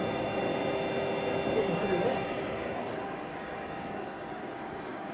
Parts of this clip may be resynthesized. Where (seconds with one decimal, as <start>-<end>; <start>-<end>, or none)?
0.0-0.5; 1.6-5.1